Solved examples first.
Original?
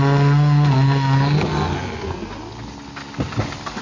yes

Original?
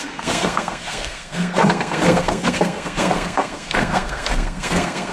no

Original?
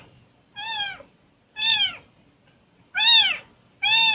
yes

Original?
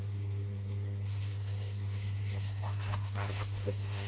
no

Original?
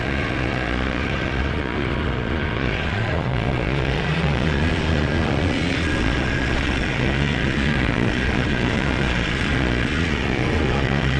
no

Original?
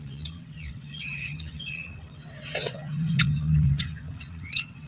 no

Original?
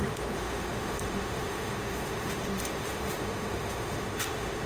no